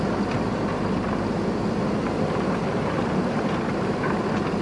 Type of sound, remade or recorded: recorded